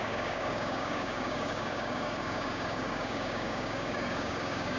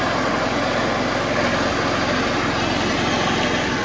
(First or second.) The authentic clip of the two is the second